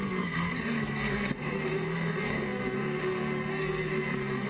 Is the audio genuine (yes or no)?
no